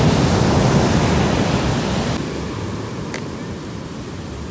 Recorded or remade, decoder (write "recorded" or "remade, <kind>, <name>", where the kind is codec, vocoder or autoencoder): recorded